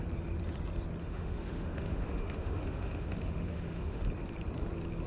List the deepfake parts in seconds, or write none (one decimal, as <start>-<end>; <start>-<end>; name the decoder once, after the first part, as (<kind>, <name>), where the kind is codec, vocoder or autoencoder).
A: 1.0-4.1 (autoencoder, DAC-VAE)